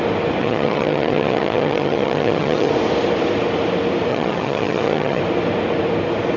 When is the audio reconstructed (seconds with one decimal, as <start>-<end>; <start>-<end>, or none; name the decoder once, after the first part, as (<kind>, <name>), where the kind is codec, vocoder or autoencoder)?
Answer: 0.4-2.7 (vocoder, HiFi-GAN); 4.1-5.2